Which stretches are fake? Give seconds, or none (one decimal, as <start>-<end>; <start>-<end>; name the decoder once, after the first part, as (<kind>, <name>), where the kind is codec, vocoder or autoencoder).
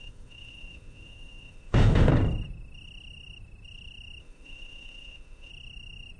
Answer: 0.0-2.1 (autoencoder, DAC-VAE); 4.2-5.5